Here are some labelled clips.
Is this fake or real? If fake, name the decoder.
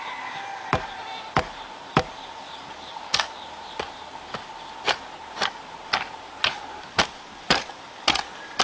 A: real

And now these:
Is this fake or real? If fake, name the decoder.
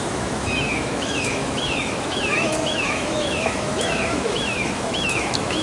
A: fake, autoencoder, DAC-VAE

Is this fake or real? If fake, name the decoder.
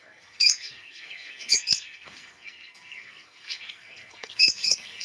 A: fake, codec, SNAC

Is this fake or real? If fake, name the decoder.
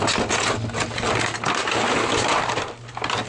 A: real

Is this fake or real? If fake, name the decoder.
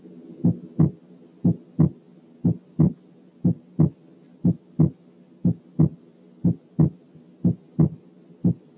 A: real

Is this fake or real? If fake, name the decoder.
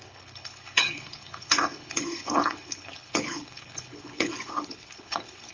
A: fake, codec, HILCodec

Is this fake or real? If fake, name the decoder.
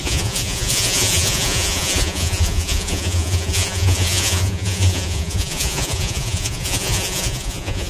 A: fake, vocoder, Vocos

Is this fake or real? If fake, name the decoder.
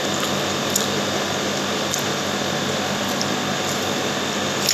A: real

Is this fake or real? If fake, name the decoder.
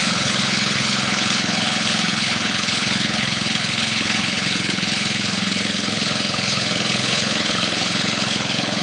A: fake, codec, HILCodec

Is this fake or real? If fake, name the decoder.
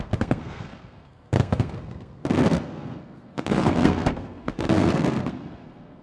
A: fake, codec, SNAC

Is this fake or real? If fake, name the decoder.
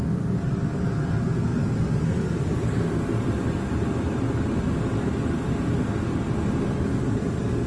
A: real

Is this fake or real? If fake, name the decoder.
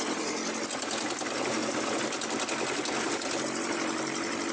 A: real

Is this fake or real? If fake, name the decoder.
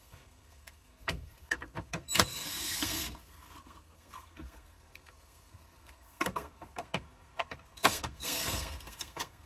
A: fake, codec, SNAC